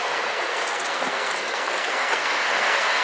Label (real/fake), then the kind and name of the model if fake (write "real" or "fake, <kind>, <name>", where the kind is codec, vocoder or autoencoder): fake, codec, SNAC